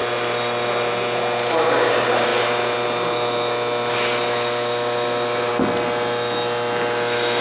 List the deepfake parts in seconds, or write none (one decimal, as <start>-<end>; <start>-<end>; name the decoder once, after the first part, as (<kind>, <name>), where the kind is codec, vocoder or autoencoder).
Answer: none